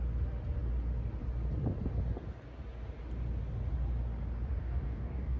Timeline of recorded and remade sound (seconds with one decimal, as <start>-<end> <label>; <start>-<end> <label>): 0.0-4.6 recorded; 4.6-5.4 remade